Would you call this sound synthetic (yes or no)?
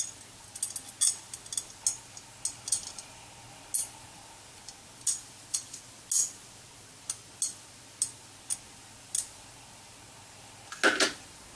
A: no